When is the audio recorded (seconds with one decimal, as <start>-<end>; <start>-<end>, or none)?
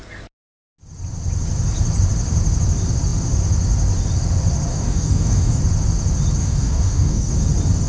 0.0-4.7; 5.6-6.4; 7.3-7.9